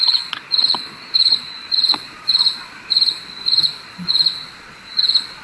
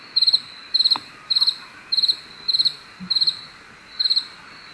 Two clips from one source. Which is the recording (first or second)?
second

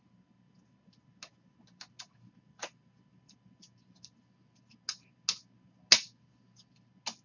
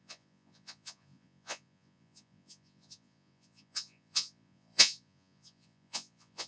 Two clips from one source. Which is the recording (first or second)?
first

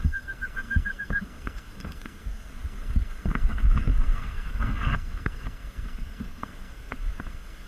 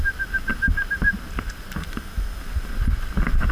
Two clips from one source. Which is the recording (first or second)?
second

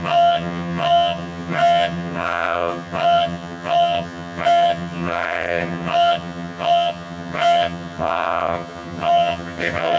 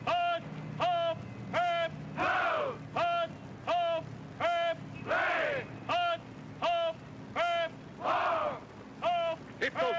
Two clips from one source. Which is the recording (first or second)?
second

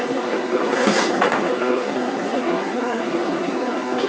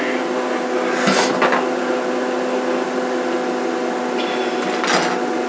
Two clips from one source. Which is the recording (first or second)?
second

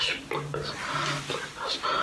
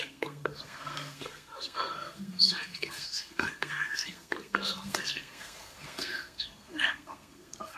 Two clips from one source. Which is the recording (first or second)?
first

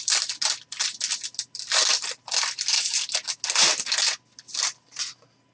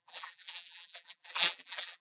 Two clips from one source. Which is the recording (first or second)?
first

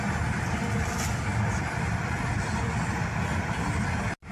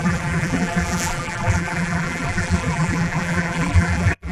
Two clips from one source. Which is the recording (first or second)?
first